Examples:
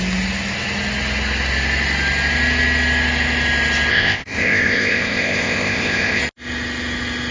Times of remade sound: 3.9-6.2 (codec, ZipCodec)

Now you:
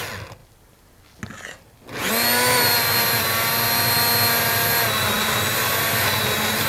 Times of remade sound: none

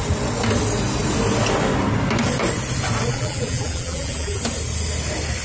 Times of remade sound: 3.1-4.4 (vocoder, BigVGAN v2)

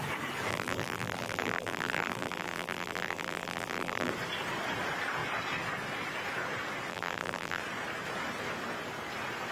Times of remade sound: 0.5-4.1 (vocoder, BigVGAN v2); 6.9-7.6

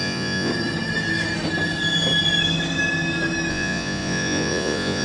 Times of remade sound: 0.0-0.5 (vocoder, Vocos); 3.5-5.0

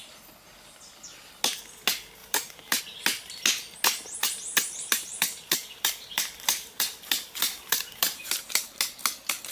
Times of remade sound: 2.2-2.8 (vocoder, BigVGAN v2); 4.5-8.8